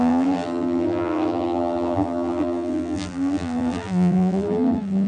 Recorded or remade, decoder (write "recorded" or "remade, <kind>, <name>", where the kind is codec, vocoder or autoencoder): remade, vocoder, BigVGAN v2